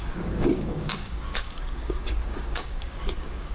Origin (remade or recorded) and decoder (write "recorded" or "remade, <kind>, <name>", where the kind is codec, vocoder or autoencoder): remade, codec, DAC